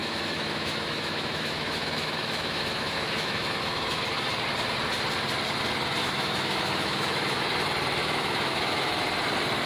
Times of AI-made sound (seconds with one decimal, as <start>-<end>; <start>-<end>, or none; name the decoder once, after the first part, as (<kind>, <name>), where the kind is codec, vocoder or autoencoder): 0.0-4.0 (autoencoder, DAC-VAE); 6.0-7.4; 8.0-9.0